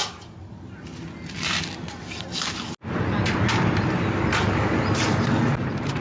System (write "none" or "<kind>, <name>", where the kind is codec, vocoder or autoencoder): none